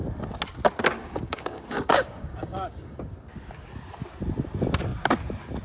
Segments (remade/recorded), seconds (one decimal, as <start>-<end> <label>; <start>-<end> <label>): 0.0-1.0 recorded; 1.0-3.0 remade; 3.0-5.6 recorded